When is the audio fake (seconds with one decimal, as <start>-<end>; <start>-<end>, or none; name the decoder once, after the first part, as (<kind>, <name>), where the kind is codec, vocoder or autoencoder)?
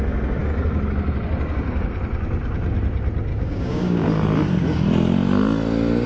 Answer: 3.3-4.1 (codec, DAC)